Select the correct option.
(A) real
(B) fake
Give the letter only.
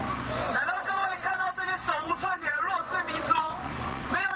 B